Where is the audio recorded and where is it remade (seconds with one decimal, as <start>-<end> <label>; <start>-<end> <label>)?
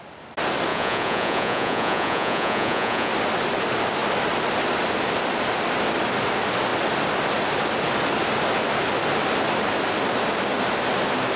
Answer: 0.0-0.7 recorded; 0.7-3.1 remade; 3.1-11.4 recorded